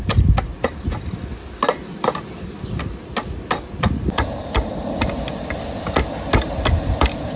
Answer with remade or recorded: recorded